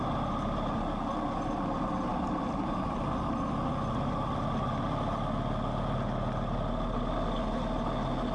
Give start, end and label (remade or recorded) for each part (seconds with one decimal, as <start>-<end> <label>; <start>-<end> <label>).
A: 0.0-2.1 recorded; 2.1-2.9 remade; 2.9-8.3 recorded